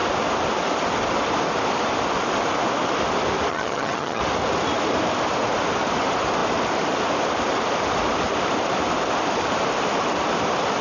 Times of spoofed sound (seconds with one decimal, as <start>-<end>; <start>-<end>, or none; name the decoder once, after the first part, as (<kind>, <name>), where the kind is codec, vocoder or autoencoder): 3.5-4.2 (vocoder, HiFi-GAN)